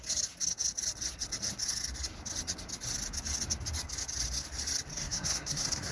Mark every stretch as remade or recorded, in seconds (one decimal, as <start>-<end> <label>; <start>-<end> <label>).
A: 0.0-4.9 recorded; 4.9-5.9 remade